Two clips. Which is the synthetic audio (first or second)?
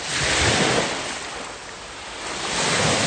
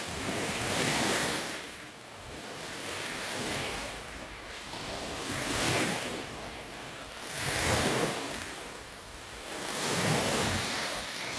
second